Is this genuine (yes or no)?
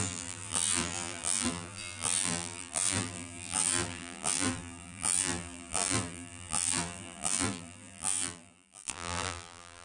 no